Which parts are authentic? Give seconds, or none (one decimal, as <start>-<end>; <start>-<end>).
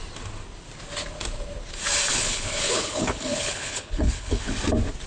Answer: 0.0-2.1; 4.5-5.1